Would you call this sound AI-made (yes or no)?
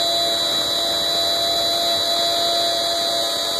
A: no